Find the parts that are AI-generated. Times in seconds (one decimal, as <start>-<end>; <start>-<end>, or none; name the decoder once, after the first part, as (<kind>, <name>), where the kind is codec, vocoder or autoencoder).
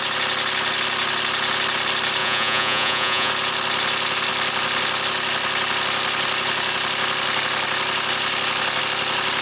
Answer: 2.2-3.3 (vocoder, Vocos)